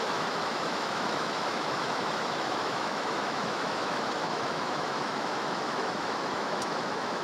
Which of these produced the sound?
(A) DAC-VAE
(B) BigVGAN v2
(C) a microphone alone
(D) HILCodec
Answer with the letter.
A